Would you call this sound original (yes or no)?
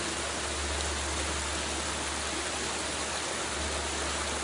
yes